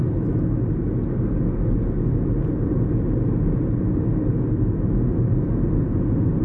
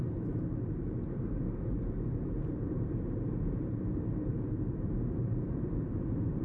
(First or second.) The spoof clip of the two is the second